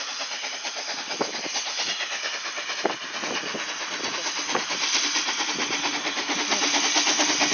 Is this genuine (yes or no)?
yes